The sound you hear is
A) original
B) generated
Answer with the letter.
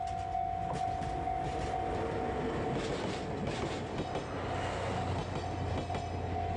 A